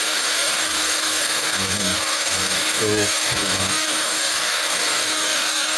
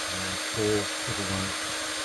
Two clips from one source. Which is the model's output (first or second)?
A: first